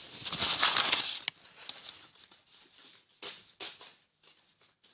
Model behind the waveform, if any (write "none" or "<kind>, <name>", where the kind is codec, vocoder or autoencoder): none